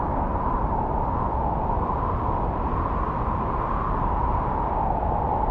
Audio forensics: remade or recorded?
recorded